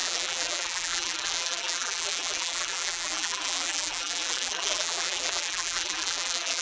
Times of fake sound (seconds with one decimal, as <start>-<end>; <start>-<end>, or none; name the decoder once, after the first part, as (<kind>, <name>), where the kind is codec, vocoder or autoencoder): 0.0-6.6 (vocoder, BigVGAN v2)